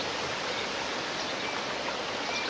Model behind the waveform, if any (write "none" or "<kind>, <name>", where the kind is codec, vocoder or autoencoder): none